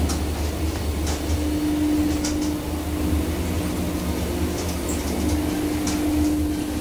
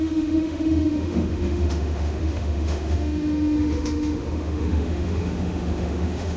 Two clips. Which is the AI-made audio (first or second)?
second